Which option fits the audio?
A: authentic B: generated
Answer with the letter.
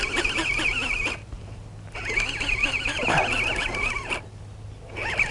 A